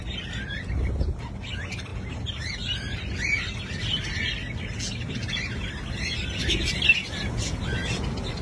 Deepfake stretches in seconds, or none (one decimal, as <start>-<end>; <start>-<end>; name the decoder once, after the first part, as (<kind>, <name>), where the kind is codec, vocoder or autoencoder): 1.9-2.5 (vocoder, BigVGAN v2)